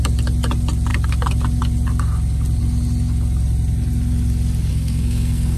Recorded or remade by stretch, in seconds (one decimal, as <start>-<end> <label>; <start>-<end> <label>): 0.0-4.7 recorded; 4.7-5.6 remade